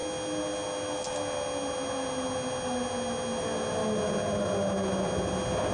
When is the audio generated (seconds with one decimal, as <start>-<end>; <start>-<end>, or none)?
none